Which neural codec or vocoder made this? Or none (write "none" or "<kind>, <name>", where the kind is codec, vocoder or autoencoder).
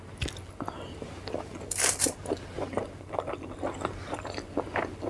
none